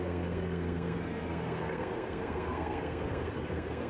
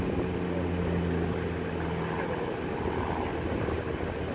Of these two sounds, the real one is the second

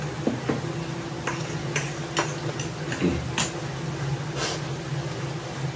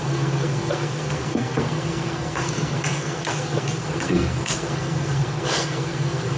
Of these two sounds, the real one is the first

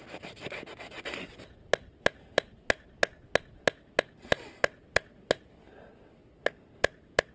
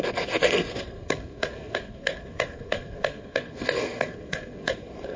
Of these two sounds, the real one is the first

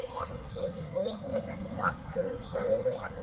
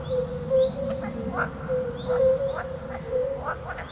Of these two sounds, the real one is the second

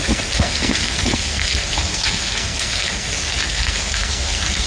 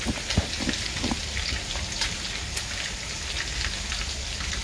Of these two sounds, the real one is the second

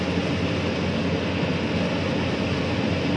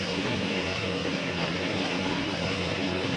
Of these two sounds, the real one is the first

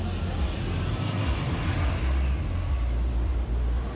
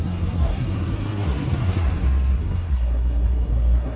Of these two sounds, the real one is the first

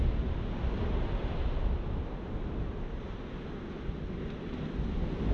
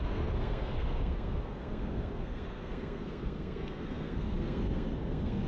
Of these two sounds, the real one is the first